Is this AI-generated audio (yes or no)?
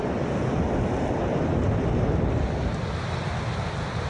no